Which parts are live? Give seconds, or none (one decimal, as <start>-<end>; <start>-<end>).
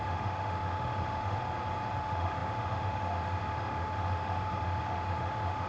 1.4-2.0